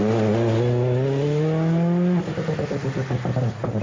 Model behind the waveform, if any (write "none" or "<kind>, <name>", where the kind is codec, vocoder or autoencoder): none